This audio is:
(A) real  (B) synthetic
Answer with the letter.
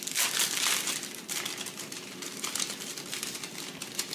A